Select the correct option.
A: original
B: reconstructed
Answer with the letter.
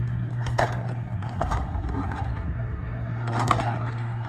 B